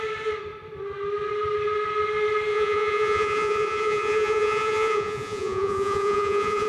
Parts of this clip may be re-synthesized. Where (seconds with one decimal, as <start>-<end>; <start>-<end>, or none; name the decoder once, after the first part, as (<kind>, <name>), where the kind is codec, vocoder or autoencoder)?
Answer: 2.5-6.7 (vocoder, Vocos)